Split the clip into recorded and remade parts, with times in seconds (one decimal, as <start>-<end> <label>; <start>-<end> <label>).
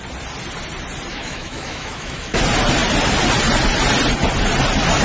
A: 0.0-1.1 recorded; 1.1-2.4 remade; 2.4-5.0 recorded